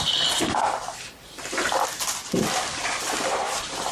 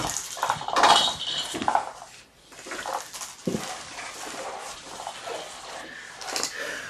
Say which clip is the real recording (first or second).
second